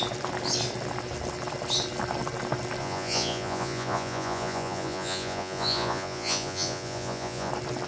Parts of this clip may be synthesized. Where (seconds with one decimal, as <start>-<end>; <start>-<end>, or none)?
2.8-7.5